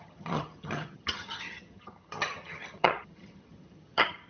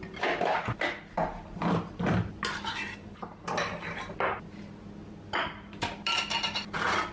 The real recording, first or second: second